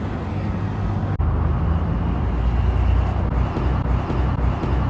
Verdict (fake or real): real